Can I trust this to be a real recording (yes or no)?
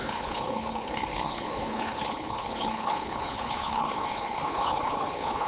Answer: no